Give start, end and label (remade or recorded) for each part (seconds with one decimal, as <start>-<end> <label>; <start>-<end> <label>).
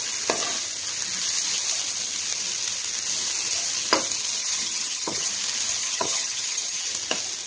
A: 0.0-4.4 recorded; 4.4-5.3 remade; 5.3-5.8 recorded; 5.8-6.9 remade; 6.9-7.5 recorded